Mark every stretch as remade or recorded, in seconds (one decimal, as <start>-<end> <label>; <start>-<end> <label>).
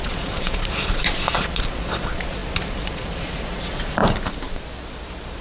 0.0-4.0 remade; 4.0-5.4 recorded